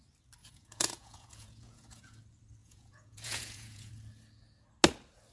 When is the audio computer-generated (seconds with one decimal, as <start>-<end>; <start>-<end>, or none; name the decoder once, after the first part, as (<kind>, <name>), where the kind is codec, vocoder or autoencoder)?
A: 0.4-2.2 (vocoder, Vocos); 2.6-3.9